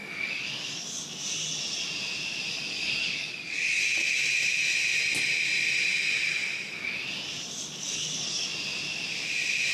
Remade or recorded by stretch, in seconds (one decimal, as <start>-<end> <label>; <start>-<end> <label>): 0.0-1.0 remade; 1.0-2.5 recorded; 2.5-3.8 remade; 3.8-7.8 recorded; 7.8-8.5 remade; 8.5-9.7 recorded